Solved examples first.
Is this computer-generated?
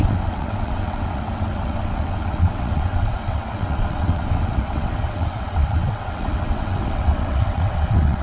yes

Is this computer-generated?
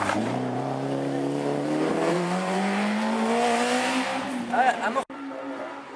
yes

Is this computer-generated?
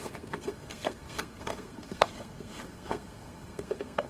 yes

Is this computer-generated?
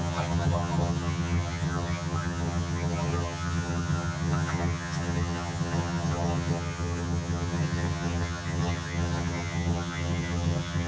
yes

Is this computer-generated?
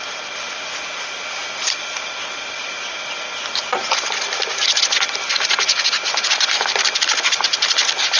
no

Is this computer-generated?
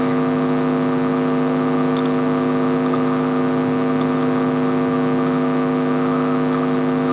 no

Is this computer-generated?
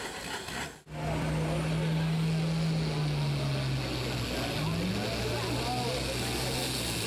no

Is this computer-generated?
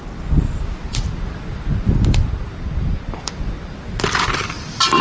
no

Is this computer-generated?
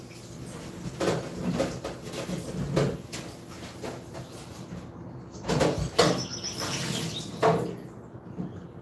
no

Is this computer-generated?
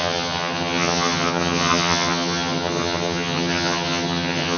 yes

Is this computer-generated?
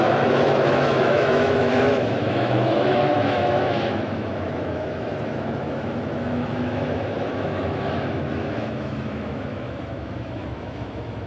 yes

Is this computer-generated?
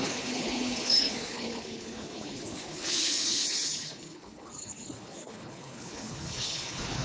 yes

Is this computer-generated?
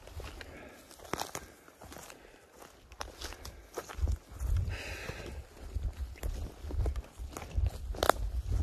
no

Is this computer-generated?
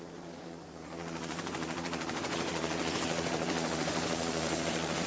yes